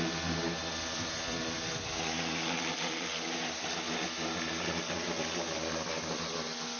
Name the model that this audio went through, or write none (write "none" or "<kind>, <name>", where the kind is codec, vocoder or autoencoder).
none